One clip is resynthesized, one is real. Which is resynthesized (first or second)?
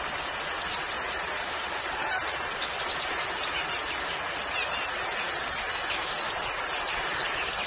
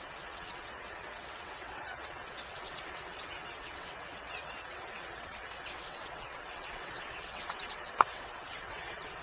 second